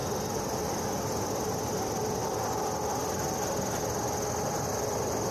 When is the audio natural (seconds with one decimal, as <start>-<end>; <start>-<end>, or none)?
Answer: 0.0-5.3